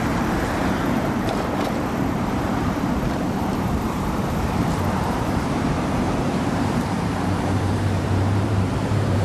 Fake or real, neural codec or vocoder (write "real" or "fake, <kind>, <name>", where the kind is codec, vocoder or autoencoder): fake, vocoder, BigVGAN v2